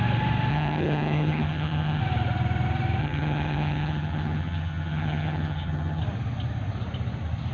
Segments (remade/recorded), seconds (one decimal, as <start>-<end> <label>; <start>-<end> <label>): 0.0-0.5 recorded; 0.5-2.0 remade; 2.0-3.0 recorded; 3.0-6.0 remade; 6.0-7.5 recorded